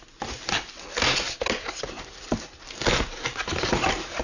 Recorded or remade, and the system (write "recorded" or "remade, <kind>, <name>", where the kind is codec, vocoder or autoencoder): recorded